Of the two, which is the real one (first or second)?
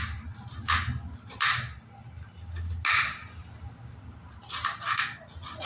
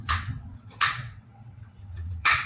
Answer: first